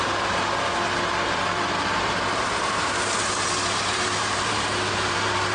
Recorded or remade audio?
remade